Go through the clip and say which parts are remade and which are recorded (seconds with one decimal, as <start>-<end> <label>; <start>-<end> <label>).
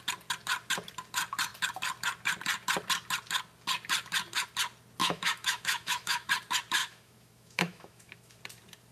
0.0-5.0 recorded; 5.0-6.3 remade; 6.3-6.8 recorded; 6.8-8.4 remade; 8.4-8.9 recorded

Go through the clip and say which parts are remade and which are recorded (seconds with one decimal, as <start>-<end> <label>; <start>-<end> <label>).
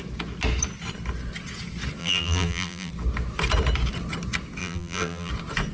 0.0-2.0 recorded; 2.0-2.9 remade; 2.9-4.6 recorded; 4.6-5.3 remade; 5.3-5.7 recorded